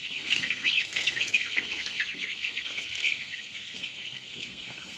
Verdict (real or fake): fake